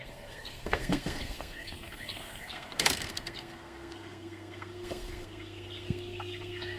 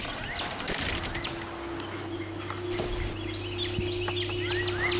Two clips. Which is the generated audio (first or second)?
first